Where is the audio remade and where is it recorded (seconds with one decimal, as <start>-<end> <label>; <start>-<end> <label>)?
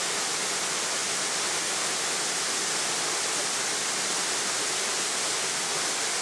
0.0-6.2 recorded